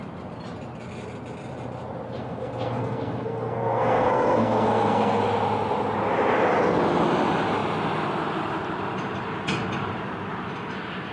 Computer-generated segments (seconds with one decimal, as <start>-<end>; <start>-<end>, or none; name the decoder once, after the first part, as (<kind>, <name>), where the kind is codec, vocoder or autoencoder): 2.2-5.2 (codec, SNAC)